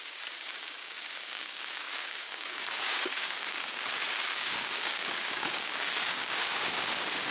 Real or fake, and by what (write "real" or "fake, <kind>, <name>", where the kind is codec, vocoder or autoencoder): fake, codec, DAC